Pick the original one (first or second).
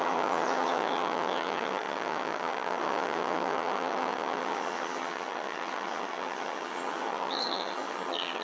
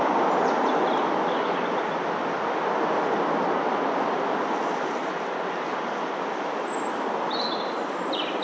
second